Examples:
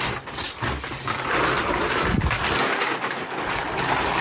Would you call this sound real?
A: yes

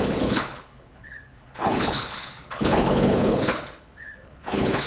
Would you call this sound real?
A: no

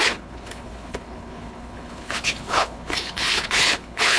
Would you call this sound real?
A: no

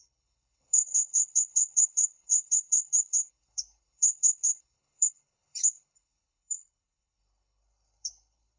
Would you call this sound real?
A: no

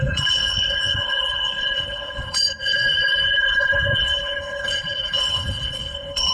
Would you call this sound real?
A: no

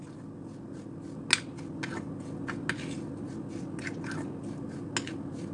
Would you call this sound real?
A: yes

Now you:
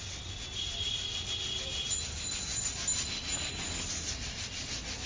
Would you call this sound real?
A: yes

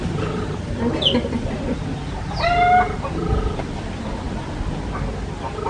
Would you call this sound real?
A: yes